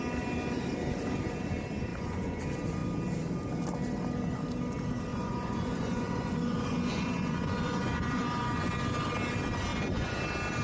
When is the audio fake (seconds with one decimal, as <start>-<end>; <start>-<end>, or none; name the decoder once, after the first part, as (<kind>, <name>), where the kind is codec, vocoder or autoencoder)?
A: 1.9-2.4 (vocoder, Vocos); 5.1-8.7; 9.7-10.2